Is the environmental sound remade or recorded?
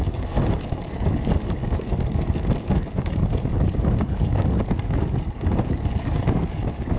remade